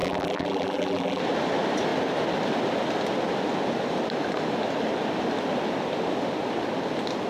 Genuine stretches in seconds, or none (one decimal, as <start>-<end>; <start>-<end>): 1.2-7.3